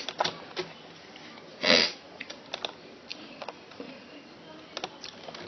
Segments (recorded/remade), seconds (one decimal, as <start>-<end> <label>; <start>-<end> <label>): 0.0-1.5 recorded; 1.5-2.4 remade; 2.4-3.1 recorded; 3.1-4.3 remade; 4.3-5.5 recorded

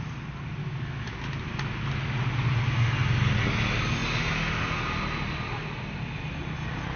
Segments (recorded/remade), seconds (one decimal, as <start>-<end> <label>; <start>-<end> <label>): 0.0-0.6 recorded; 0.6-1.2 remade; 1.2-7.0 recorded

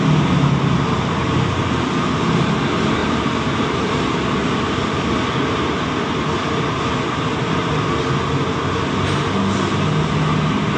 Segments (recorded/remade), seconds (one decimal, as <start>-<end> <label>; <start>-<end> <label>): 0.0-3.0 recorded; 3.0-4.5 remade; 4.5-10.8 recorded

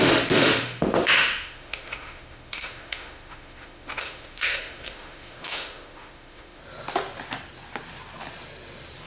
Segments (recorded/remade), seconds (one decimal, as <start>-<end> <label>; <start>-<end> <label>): 0.0-6.6 remade; 6.6-9.1 recorded

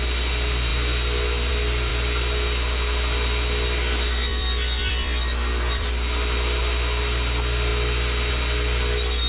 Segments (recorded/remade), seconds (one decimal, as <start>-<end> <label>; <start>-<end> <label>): 0.0-9.3 remade

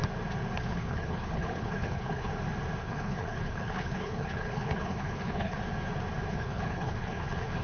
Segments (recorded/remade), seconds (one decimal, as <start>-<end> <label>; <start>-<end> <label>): 0.0-0.6 recorded; 0.6-2.3 remade; 2.3-2.8 recorded; 2.8-5.6 remade; 5.6-6.3 recorded; 6.3-7.6 remade

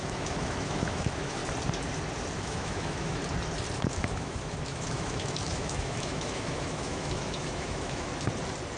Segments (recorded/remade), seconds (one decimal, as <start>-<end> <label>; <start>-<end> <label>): 0.0-1.4 remade; 1.4-2.4 recorded; 2.4-3.2 remade; 3.2-3.8 recorded; 3.8-8.1 remade; 8.1-8.8 recorded

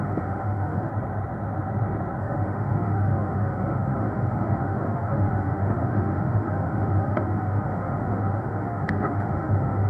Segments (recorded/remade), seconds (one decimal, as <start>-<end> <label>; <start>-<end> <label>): 0.0-0.9 remade; 0.9-2.2 recorded; 2.2-9.9 remade